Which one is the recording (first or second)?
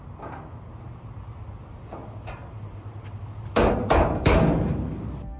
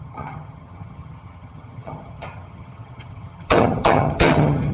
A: first